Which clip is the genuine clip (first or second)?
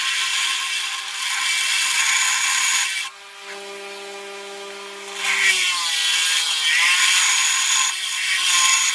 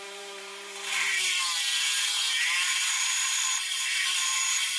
first